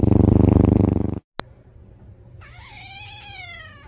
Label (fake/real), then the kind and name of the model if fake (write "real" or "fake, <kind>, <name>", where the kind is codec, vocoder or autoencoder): real